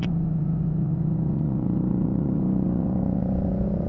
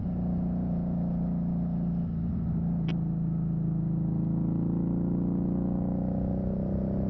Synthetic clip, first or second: first